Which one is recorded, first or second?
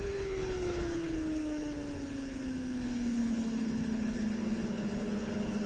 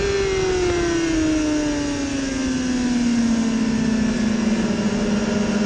second